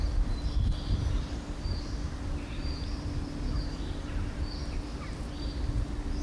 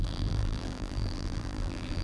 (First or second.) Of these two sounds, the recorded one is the first